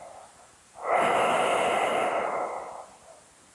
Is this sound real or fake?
real